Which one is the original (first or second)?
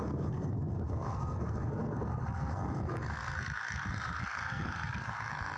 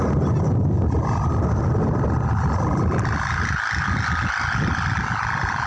second